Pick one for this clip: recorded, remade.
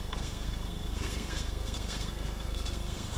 remade